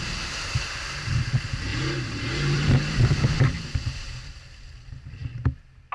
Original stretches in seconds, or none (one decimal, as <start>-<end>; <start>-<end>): 0.0-1.7; 4.3-5.9